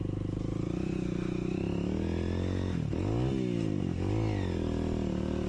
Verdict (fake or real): real